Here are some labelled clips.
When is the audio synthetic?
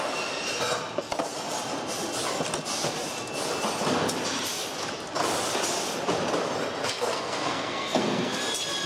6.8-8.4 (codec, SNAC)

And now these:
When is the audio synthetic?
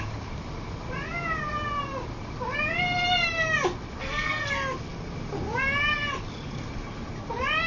4.0-4.5 (codec, SNAC)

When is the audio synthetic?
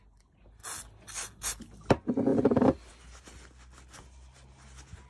none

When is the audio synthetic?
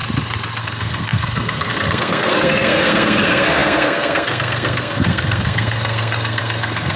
0.6-7.0 (codec, SNAC)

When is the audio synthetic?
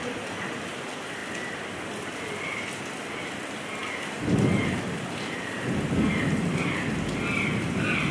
none